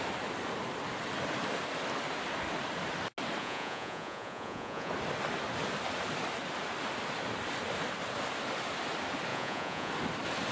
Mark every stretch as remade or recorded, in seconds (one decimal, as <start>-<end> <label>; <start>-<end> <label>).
0.0-3.4 recorded; 3.4-4.9 remade; 4.9-9.3 recorded; 9.3-9.9 remade; 9.9-10.5 recorded